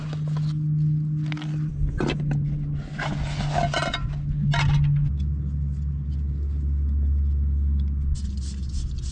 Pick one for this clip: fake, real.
real